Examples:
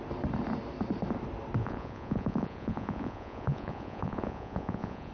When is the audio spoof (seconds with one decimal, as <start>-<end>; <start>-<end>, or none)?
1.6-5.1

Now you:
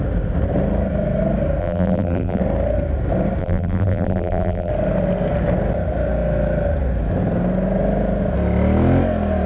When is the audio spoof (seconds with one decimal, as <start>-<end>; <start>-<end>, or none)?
1.6-2.4; 3.4-4.7

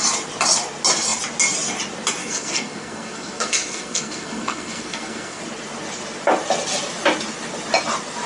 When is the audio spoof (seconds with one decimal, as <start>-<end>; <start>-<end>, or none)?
2.2-5.4

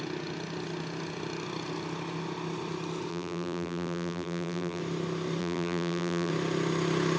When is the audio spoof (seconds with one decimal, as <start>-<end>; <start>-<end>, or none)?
3.1-4.8; 5.4-6.3

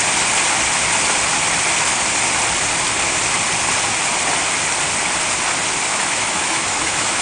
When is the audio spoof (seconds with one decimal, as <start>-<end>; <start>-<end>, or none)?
5.9-7.2

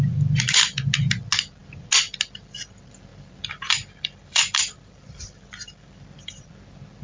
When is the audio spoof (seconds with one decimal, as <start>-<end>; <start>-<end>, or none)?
3.1-6.2